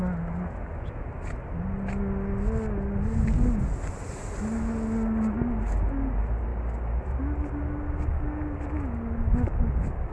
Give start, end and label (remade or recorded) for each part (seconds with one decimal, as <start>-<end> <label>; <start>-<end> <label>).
0.0-10.1 recorded

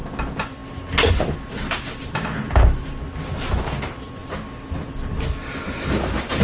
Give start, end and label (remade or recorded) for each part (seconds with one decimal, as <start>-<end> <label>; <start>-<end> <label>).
0.0-6.4 recorded